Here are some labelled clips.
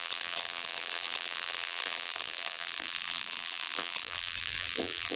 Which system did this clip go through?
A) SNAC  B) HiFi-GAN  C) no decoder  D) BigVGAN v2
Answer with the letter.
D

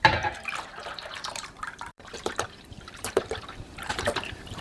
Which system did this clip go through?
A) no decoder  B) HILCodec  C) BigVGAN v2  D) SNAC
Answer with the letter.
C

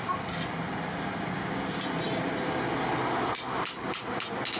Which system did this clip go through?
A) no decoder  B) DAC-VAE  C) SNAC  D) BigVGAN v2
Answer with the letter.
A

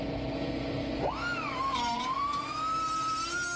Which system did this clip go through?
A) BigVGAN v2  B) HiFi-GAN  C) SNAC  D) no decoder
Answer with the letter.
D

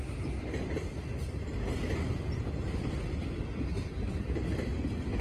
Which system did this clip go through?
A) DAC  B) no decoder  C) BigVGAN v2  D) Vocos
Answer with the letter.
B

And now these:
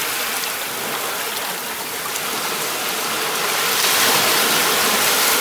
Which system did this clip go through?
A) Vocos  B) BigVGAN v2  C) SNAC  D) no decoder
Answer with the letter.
D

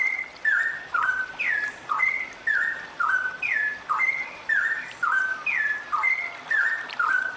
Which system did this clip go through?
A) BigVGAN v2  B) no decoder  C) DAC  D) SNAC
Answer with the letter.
A